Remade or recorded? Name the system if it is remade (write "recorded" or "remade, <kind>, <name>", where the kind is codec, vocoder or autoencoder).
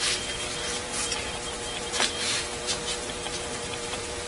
remade, vocoder, BigVGAN v2